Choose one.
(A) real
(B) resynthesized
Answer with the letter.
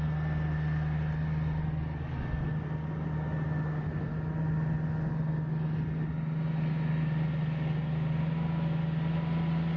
A